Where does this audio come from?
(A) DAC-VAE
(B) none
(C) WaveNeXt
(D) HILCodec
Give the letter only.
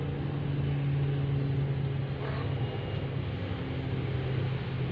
B